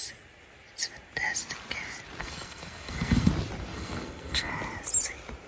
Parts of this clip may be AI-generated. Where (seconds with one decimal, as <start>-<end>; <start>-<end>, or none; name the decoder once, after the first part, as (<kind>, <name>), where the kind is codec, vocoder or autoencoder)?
2.2-3.3 (codec, SNAC); 3.7-4.5